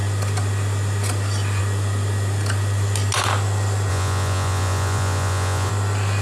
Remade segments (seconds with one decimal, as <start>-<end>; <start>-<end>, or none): 3.9-5.7